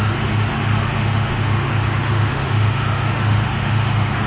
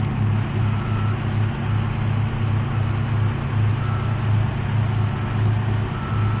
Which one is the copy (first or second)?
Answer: first